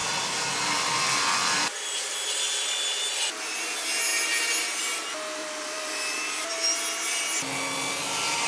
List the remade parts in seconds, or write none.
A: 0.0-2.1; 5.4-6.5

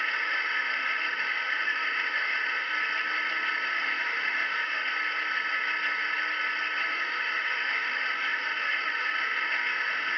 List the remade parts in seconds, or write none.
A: 0.0-2.7; 3.7-4.9; 6.9-10.2